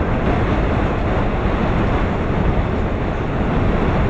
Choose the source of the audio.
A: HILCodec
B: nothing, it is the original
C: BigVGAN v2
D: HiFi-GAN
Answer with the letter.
B